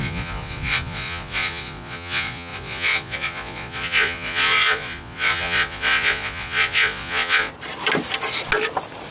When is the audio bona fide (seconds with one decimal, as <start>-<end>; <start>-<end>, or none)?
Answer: 7.5-9.1

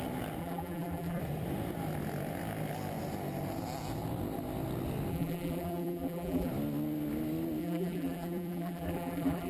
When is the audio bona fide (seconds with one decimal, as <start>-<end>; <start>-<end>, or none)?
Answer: 0.0-0.4; 1.2-5.1; 6.5-7.6

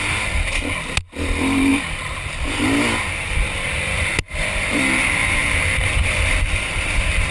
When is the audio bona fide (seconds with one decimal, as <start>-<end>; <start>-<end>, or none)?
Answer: 0.0-7.3

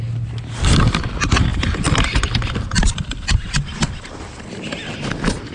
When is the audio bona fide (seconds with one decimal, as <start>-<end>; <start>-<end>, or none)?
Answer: 0.0-5.5

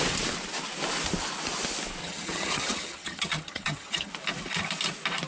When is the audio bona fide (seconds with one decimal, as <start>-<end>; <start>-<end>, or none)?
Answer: 0.0-2.0; 4.1-5.3